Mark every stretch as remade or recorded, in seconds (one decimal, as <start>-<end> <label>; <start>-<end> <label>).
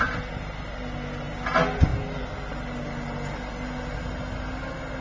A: 0.0-5.0 recorded